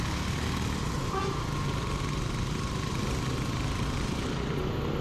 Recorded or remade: recorded